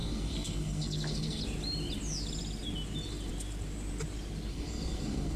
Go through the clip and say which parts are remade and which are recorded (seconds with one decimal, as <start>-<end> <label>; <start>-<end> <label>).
0.0-1.4 remade; 1.4-4.5 recorded; 4.5-5.4 remade